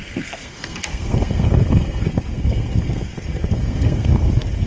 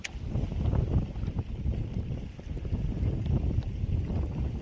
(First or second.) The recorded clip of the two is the second